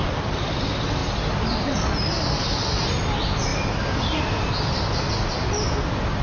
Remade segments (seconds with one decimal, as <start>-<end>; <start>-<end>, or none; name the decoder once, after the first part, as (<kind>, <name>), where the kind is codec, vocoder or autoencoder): 0.0-0.6 (vocoder, BigVGAN v2)